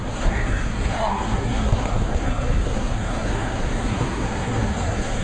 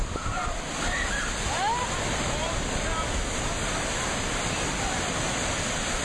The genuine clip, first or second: second